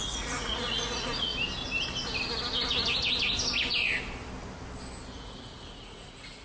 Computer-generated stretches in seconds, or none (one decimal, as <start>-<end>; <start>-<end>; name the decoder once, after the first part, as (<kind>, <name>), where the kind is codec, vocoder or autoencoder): 0.0-1.3 (vocoder, Vocos); 5.1-6.4

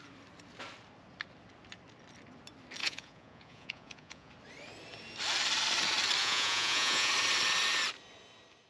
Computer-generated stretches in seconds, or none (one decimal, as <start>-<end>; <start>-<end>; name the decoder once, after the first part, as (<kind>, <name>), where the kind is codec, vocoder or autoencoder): 2.8-4.3 (vocoder, Vocos); 6.2-7.1

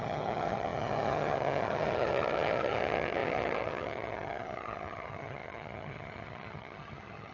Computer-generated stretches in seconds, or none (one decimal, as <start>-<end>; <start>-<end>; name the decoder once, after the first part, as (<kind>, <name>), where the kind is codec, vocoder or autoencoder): 0.0-7.3 (vocoder, HiFi-GAN)